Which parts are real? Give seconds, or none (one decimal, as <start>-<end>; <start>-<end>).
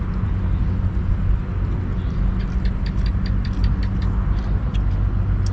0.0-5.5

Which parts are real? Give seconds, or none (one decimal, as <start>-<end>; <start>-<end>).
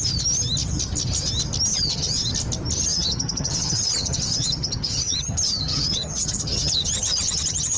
0.0-1.7; 2.3-2.9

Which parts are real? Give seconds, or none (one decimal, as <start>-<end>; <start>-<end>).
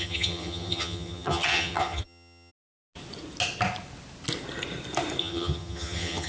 2.5-5.2